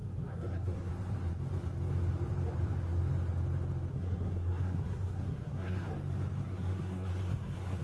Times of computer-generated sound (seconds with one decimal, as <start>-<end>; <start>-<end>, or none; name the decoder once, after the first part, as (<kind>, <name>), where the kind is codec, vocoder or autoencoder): 0.0-0.9 (codec, SNAC); 3.9-5.9; 6.4-7.8